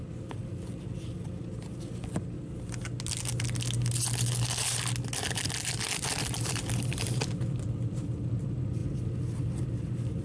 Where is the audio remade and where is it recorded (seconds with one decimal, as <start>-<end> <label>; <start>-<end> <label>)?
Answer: 0.0-10.2 recorded